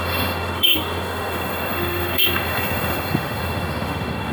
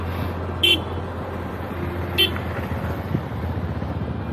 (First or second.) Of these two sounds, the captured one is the second